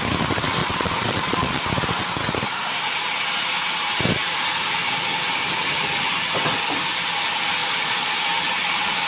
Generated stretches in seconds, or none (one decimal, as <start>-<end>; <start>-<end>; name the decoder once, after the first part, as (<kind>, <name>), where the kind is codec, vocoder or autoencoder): 0.6-1.6 (vocoder, Vocos); 7.6-8.2